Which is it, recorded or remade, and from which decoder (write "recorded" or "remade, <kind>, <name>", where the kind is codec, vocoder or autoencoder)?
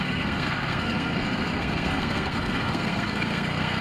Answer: remade, codec, SNAC